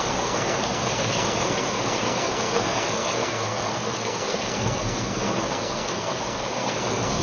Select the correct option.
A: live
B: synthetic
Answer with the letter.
B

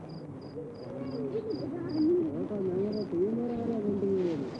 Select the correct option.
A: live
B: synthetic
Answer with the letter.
A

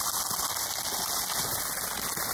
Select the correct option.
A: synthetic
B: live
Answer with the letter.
B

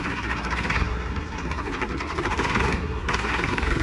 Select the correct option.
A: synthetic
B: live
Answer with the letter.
A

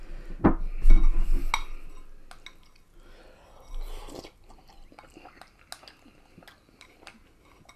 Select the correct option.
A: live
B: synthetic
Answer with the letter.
A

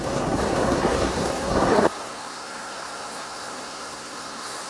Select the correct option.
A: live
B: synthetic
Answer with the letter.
B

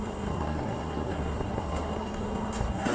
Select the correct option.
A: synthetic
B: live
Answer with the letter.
A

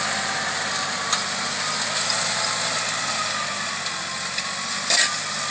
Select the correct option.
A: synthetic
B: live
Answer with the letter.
B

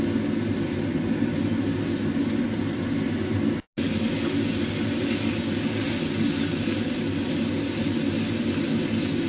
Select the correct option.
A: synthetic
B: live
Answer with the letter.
B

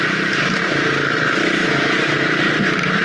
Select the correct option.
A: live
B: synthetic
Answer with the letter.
A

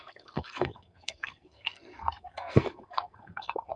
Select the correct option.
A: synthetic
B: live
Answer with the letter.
A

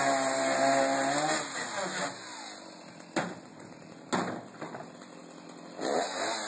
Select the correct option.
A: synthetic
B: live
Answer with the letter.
B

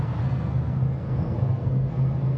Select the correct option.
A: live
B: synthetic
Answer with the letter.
B